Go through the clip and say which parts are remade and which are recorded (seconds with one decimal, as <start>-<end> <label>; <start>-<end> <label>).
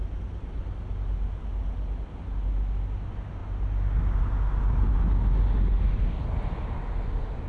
0.0-7.5 recorded